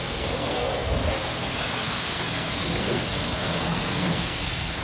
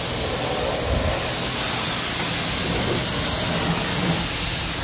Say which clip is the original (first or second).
second